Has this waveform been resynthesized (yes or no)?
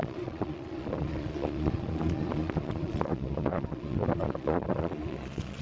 yes